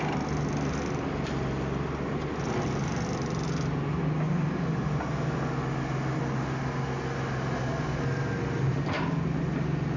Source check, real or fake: real